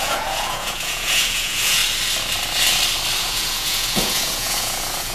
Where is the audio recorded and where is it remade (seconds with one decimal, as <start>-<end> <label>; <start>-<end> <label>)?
0.0-1.8 remade; 1.8-3.2 recorded; 3.2-5.1 remade